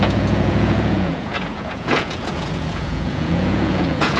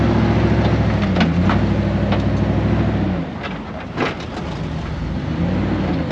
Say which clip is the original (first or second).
second